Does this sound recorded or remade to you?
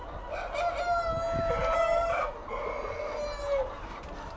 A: recorded